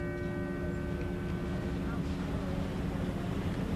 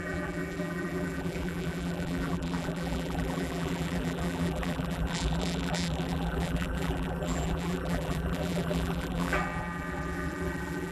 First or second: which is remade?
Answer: second